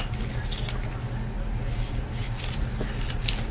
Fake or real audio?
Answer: real